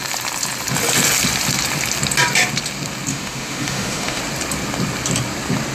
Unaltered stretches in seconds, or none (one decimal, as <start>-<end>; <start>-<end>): 0.0-3.1; 4.2-5.7